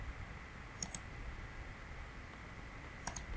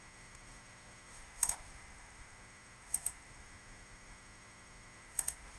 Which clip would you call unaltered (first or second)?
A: first